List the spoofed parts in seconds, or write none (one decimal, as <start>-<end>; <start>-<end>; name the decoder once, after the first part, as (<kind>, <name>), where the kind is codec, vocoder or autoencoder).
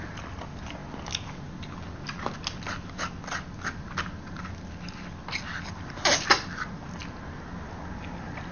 0.0-0.8 (vocoder, BigVGAN v2); 5.6-7.0; 8.0-8.5